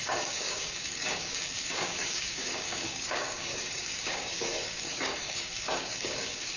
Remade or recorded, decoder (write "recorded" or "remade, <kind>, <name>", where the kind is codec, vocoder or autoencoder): remade, codec, DAC